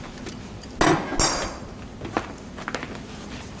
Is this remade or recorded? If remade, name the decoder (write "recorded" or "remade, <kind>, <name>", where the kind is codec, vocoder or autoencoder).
recorded